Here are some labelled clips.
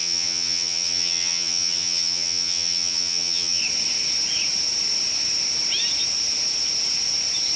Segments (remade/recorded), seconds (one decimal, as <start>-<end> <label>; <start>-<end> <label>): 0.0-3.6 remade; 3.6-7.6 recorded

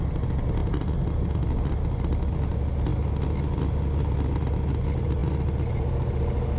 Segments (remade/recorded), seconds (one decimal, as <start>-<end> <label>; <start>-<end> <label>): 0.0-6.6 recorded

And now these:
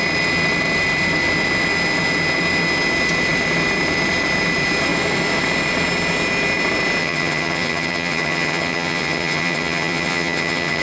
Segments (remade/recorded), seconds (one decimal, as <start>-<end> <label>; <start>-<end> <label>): 0.0-7.0 recorded; 7.0-10.8 remade

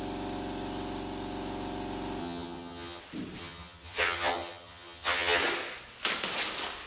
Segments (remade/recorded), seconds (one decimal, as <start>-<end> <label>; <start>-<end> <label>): 0.0-2.2 recorded; 2.2-3.0 remade; 3.0-3.4 recorded; 3.4-5.4 remade; 5.4-6.9 recorded

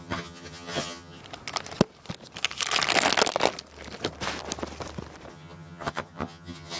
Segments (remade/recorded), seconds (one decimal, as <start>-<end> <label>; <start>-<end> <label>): 0.0-1.2 remade; 1.2-5.3 recorded; 5.3-6.8 remade

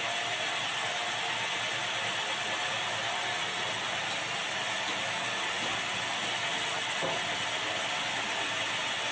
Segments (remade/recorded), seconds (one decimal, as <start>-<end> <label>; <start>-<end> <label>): 0.0-9.1 recorded

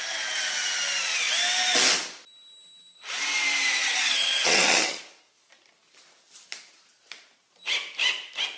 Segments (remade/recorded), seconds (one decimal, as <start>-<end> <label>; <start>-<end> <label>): 0.0-3.8 recorded; 3.8-5.0 remade; 5.0-8.6 recorded